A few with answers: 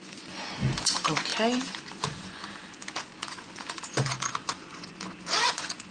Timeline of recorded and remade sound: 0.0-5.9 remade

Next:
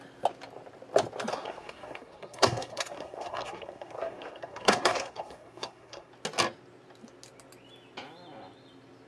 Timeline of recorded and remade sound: 0.0-1.3 recorded; 1.3-6.1 remade; 6.1-9.1 recorded

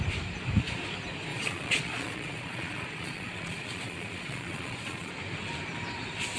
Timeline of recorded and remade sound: 0.0-1.3 recorded; 1.3-5.1 remade; 5.1-6.4 recorded

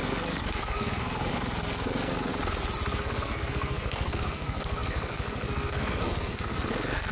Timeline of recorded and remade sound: 0.0-2.3 remade; 2.3-3.0 recorded; 3.0-7.1 remade

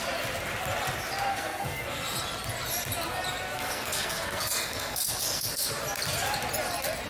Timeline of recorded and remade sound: 0.0-1.3 recorded; 1.3-2.0 remade; 2.0-3.5 recorded; 3.5-5.8 remade; 5.8-7.1 recorded

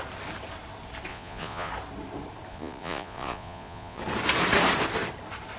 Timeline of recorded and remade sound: 0.0-1.1 recorded; 1.1-1.7 remade; 1.7-2.5 recorded; 2.5-4.0 remade; 4.0-5.6 recorded